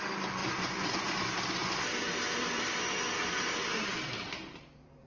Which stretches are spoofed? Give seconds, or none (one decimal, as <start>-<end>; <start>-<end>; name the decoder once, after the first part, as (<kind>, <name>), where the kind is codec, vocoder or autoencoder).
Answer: 0.4-2.0 (vocoder, BigVGAN v2); 2.4-5.1